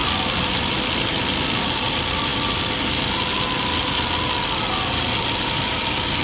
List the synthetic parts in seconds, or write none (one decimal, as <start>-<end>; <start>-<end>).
none